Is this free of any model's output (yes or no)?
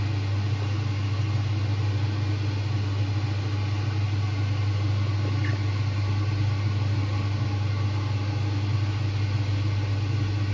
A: yes